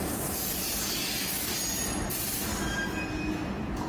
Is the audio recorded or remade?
recorded